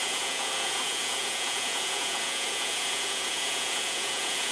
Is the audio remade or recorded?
remade